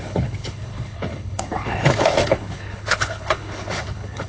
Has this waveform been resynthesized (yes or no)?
yes